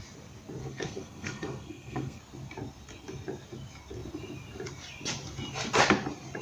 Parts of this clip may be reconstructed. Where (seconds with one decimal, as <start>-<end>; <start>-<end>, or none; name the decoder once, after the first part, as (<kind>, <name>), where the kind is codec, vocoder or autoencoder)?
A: 0.6-2.2 (codec, SNAC)